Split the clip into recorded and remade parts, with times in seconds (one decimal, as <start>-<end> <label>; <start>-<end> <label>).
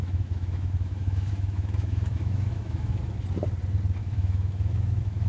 0.0-3.0 remade; 3.0-4.0 recorded; 4.0-5.3 remade